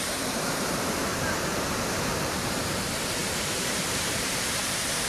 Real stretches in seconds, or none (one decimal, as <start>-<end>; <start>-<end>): 1.1-1.9